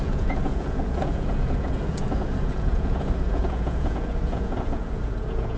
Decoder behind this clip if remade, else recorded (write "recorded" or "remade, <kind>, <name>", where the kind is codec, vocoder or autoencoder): remade, vocoder, Vocos